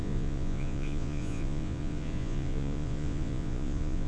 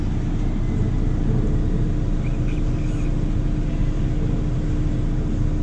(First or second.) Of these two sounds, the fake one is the first